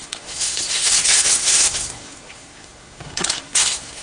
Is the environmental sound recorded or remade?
remade